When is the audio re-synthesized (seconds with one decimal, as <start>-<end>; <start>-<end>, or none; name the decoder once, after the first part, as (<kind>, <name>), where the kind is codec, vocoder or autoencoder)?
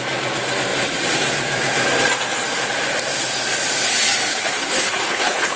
4.3-5.6 (codec, HILCodec)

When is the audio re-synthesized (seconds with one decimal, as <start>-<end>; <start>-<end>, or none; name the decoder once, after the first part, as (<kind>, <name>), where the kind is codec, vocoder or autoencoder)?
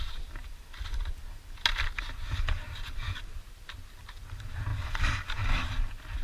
none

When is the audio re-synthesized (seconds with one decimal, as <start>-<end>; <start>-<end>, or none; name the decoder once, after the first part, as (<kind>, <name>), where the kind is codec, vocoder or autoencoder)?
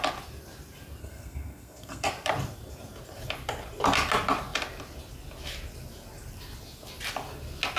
1.0-2.1 (codec, SNAC)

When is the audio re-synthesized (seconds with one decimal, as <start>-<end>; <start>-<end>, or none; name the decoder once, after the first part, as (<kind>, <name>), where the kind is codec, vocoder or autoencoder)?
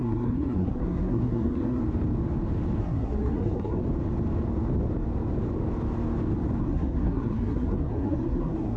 0.0-1.8 (codec, SNAC); 2.8-3.8; 6.6-8.8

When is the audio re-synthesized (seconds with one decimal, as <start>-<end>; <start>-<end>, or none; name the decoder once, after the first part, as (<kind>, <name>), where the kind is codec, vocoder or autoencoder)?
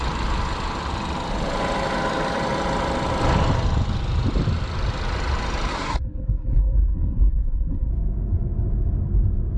5.7-7.9 (codec, SNAC)